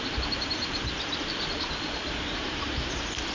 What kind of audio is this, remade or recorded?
recorded